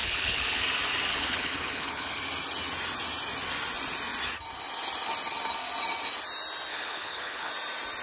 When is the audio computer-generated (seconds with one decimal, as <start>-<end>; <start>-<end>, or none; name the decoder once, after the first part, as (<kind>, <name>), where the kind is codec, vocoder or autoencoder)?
0.0-0.6 (codec, HILCodec); 1.1-2.2; 6.7-7.5